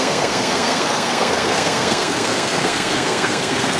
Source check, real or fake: fake